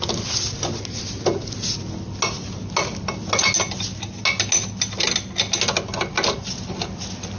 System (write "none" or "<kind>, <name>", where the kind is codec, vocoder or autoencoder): none